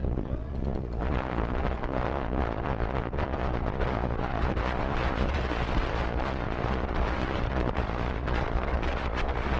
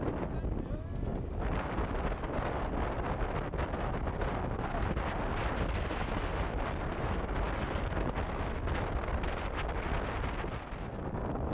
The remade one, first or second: first